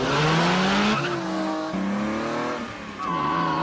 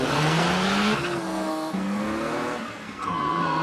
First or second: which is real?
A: first